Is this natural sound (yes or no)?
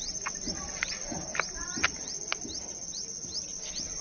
yes